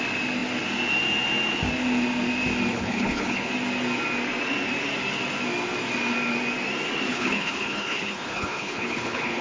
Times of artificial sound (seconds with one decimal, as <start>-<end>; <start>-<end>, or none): 2.7-3.5; 7.1-9.4